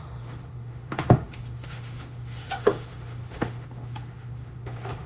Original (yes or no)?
no